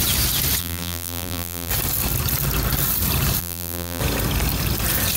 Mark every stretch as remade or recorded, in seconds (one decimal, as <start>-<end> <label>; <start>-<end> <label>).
0.0-0.6 recorded; 0.6-1.7 remade; 1.7-3.4 recorded; 3.4-4.0 remade; 4.0-5.2 recorded